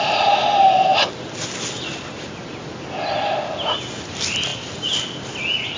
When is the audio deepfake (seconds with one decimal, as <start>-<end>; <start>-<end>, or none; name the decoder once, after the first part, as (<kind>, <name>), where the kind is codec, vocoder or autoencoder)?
none